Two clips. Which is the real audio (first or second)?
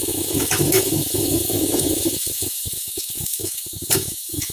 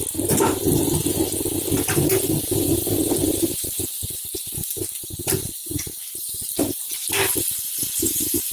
second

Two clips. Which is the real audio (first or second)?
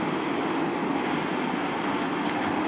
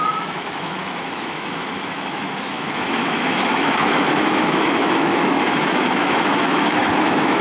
first